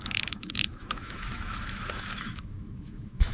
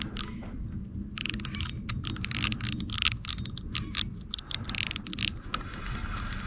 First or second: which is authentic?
second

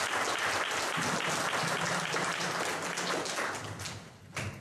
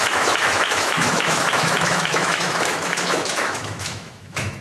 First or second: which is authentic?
first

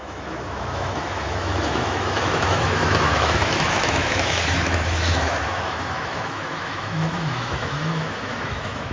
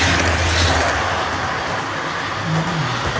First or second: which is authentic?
second